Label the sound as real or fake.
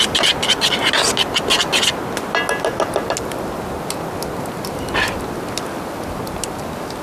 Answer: real